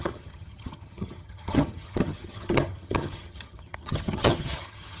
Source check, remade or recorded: remade